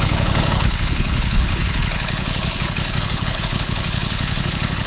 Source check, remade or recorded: remade